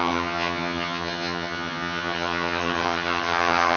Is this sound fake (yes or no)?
yes